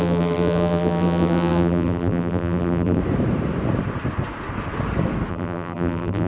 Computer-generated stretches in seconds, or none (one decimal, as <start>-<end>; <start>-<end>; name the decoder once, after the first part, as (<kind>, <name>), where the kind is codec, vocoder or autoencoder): 0.0-3.0 (vocoder, BigVGAN v2); 5.3-6.3